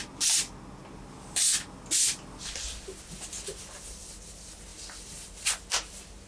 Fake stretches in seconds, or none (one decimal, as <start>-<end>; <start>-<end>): none